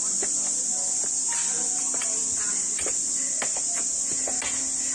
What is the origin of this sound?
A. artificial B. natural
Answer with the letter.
B